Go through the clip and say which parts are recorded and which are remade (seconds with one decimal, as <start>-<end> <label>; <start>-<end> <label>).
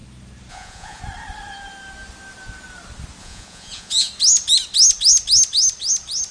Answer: 0.0-0.5 recorded; 0.5-1.0 remade; 1.0-3.2 recorded; 3.2-4.1 remade; 4.1-6.3 recorded